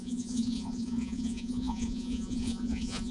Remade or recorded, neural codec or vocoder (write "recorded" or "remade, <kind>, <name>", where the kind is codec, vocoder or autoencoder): remade, vocoder, Vocos